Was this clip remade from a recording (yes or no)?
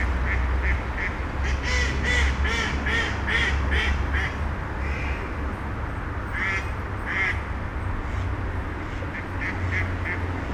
no